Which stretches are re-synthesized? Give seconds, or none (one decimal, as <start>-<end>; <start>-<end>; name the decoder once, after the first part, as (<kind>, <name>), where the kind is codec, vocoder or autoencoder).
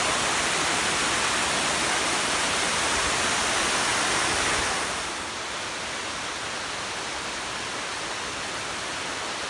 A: none